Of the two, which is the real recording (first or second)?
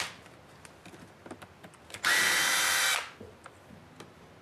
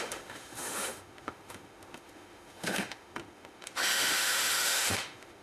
first